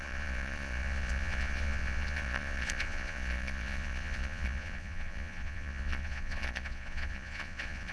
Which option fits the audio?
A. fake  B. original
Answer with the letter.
A